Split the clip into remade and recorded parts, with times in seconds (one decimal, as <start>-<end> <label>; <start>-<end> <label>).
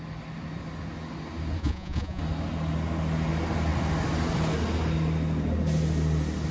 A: 0.0-1.6 recorded; 1.6-2.2 remade; 2.2-6.5 recorded